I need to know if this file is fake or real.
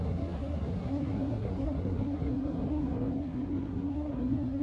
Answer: fake